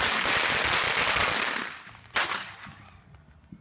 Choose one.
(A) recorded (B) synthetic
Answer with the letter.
A